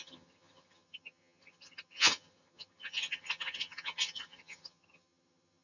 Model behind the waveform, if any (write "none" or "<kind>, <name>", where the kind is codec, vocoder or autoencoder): vocoder, HiFi-GAN